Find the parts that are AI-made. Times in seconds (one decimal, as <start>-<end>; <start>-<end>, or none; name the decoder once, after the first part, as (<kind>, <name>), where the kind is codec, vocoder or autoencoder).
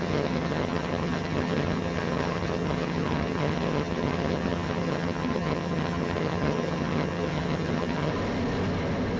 0.0-8.1 (vocoder, HiFi-GAN)